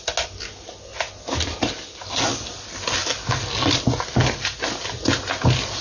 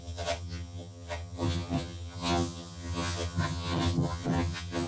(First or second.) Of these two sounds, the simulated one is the second